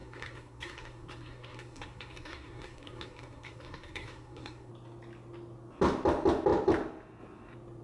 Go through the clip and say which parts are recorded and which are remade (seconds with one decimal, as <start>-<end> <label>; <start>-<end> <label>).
0.0-4.7 remade; 4.7-7.8 recorded